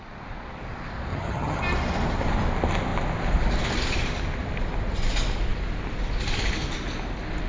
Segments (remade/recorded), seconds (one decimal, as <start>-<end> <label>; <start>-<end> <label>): 0.0-1.1 recorded; 1.1-1.6 remade; 1.6-7.5 recorded